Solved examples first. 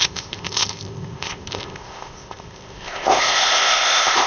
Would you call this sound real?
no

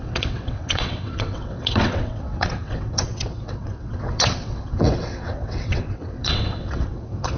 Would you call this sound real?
no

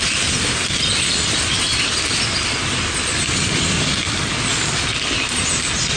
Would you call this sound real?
yes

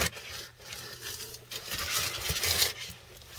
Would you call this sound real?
yes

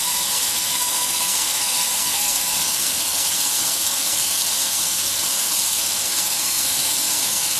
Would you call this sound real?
no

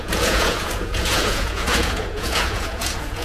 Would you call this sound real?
no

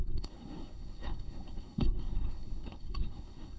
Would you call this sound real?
no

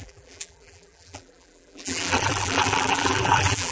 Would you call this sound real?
no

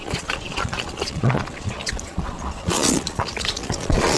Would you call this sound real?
no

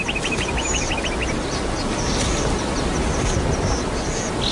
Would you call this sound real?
yes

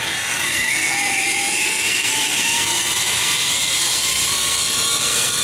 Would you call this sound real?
no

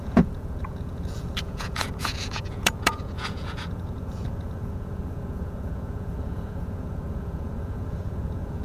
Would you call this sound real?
no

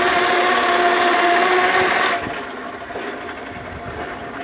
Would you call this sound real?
yes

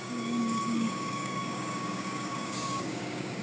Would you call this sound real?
no